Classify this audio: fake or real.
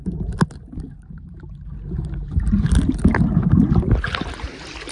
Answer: real